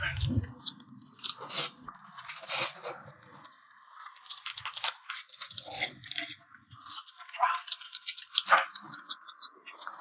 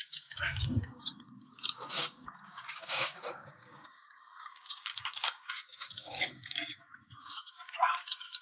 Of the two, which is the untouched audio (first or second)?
first